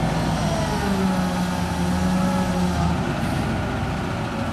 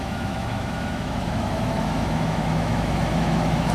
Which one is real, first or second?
first